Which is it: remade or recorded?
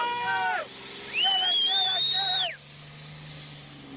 recorded